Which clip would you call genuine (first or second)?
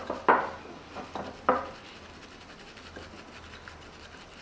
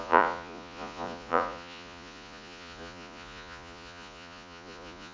first